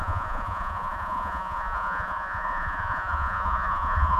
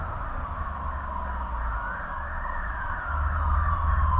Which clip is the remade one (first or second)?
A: first